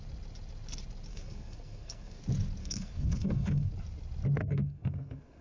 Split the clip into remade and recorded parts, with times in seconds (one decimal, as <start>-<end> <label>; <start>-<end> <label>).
0.0-1.1 recorded; 1.1-2.2 remade; 2.2-2.6 recorded; 2.6-3.7 remade; 3.7-4.4 recorded; 4.4-5.4 remade